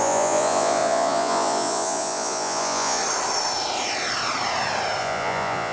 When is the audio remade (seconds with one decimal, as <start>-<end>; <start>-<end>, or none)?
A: 0.0-3.0; 5.0-5.7